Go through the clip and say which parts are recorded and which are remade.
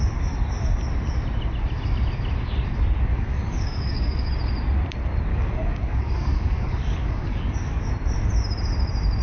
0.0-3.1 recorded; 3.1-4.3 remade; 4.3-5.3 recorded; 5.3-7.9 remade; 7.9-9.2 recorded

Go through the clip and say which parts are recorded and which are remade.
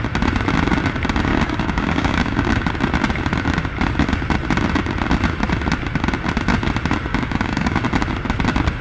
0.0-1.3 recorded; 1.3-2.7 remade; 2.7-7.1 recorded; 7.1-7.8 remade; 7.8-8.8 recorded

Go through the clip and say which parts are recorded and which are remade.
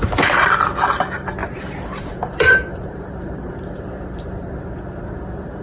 0.0-1.4 recorded; 1.4-4.6 remade; 4.6-5.6 recorded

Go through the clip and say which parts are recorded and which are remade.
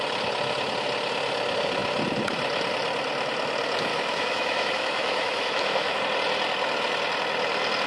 0.0-3.9 recorded; 3.9-6.0 remade; 6.0-7.9 recorded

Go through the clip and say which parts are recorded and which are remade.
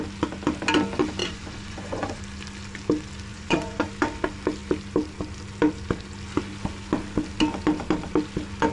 0.0-1.2 recorded; 1.2-2.2 remade; 2.2-3.3 recorded; 3.3-3.9 remade; 3.9-8.7 recorded